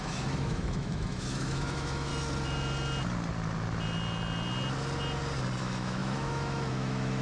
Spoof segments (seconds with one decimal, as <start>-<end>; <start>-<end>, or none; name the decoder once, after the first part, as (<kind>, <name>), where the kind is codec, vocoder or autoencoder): 0.0-2.1 (autoencoder, DAC-VAE); 5.6-7.2